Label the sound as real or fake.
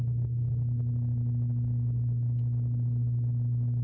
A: real